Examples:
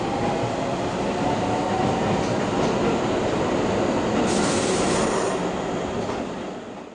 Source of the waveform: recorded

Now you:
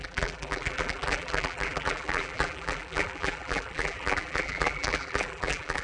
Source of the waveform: remade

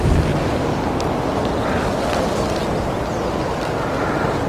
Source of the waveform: recorded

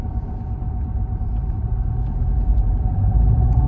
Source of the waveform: recorded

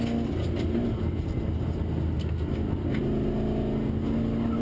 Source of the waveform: recorded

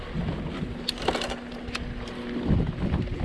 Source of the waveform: recorded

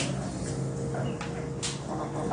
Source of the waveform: recorded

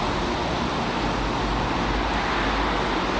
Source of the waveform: recorded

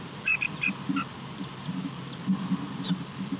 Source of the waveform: recorded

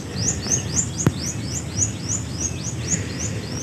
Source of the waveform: recorded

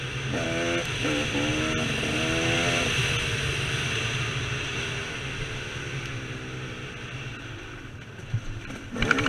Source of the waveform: recorded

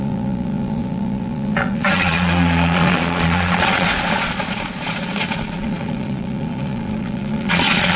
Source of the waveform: remade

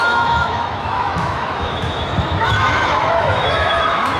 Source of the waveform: remade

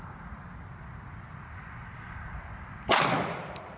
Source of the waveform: recorded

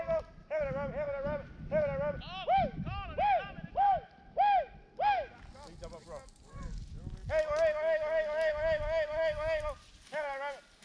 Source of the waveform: recorded